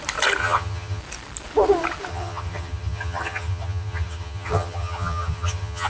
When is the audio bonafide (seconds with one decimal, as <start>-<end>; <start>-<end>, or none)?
0.0-0.4; 1.0-2.1

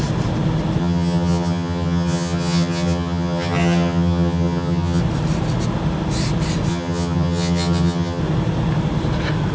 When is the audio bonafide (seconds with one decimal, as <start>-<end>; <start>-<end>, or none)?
0.0-0.8; 5.0-6.7; 8.2-9.5

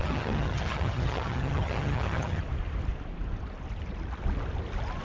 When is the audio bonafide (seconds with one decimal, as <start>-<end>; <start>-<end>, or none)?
2.4-5.0

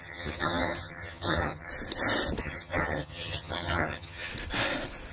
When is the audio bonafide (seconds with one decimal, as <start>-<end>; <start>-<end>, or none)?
1.7-2.4; 4.3-5.1

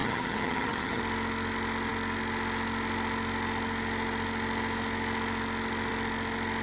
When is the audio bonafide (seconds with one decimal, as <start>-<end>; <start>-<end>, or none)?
1.0-6.6

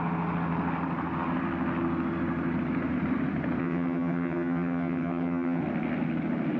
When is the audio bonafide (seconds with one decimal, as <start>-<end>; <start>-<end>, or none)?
0.0-3.6; 5.6-6.6

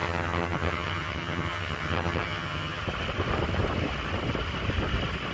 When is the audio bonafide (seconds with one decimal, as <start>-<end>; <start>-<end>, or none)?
2.8-5.3

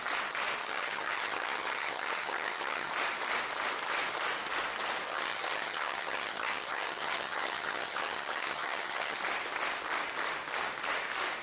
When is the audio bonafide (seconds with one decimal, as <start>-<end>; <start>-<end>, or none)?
0.0-0.6; 2.9-5.1; 9.2-11.4